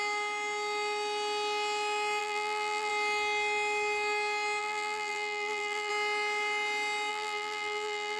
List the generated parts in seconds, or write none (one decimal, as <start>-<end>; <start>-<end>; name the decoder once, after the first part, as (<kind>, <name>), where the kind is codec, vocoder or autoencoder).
2.2-2.9 (vocoder, BigVGAN v2); 4.6-5.9; 7.1-8.2